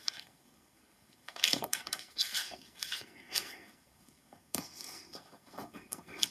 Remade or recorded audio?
remade